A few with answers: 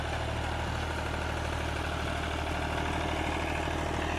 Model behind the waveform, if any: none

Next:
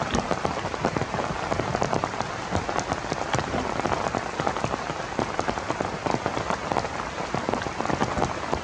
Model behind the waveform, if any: none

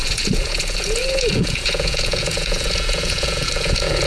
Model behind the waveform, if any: vocoder, Vocos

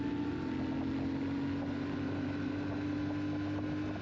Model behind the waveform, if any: none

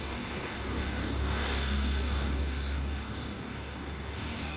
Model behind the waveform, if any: codec, DAC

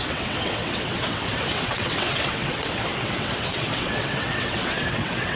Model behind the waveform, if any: vocoder, WaveNeXt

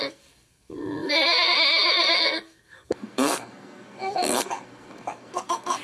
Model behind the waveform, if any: codec, SNAC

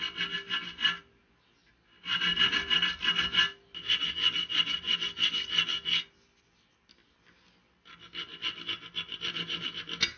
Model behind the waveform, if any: none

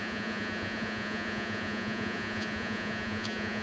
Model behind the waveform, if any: vocoder, Vocos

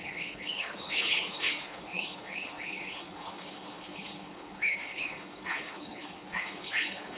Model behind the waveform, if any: codec, HILCodec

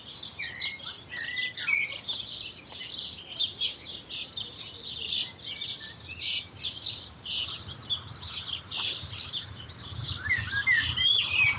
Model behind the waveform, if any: none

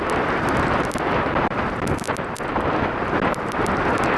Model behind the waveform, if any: none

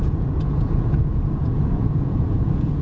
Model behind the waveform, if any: vocoder, Vocos